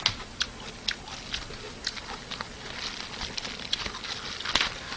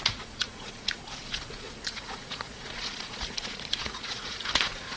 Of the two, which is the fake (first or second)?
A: second